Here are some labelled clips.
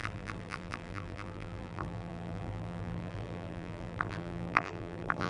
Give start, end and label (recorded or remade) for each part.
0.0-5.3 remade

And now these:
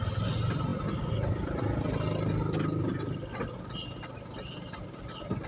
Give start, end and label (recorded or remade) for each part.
0.0-5.5 recorded

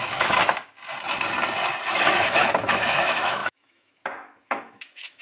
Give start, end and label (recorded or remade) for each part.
0.0-0.4 remade; 0.4-1.9 recorded; 1.9-5.2 remade

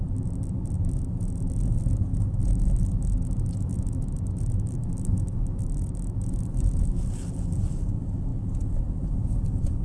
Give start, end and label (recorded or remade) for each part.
0.0-2.1 recorded; 2.1-7.0 remade; 7.0-9.8 recorded

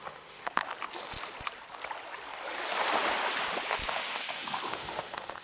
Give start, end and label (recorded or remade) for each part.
0.0-0.7 remade; 0.7-3.9 recorded; 3.9-5.4 remade

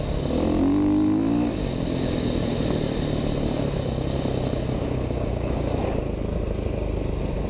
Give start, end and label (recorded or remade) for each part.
0.0-4.8 recorded; 4.8-5.8 remade; 5.8-7.5 recorded

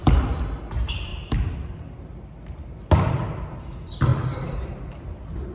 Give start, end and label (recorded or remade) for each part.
0.0-5.5 recorded

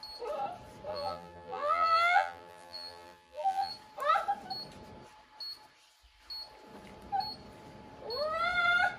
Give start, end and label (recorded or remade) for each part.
0.0-0.9 recorded; 0.9-3.7 remade; 3.7-9.0 recorded